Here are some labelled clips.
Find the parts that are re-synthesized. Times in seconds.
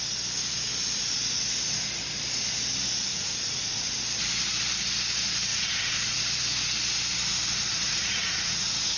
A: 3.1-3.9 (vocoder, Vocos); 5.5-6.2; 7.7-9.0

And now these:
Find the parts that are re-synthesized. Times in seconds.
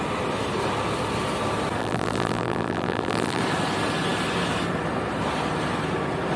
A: 1.8-3.4 (vocoder, BigVGAN v2)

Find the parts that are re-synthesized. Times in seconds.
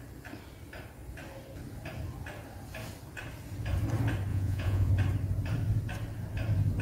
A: 4.3-4.9 (vocoder, Vocos)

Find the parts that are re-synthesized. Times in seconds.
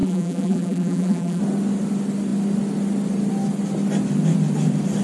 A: 0.0-1.4 (vocoder, BigVGAN v2)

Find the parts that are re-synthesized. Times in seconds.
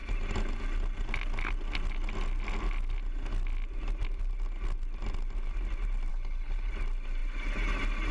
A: 6.1-6.7 (codec, HILCodec)